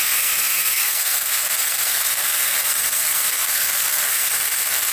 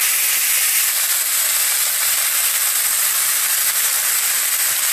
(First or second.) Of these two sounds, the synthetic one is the first